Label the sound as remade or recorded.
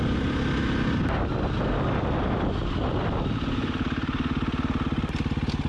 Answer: recorded